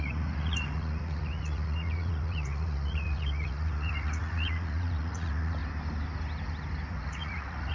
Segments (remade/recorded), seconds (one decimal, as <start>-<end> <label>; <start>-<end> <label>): 0.0-5.6 remade; 5.6-6.9 recorded; 6.9-7.7 remade